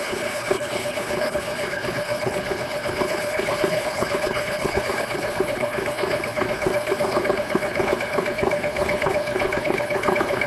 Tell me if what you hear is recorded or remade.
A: remade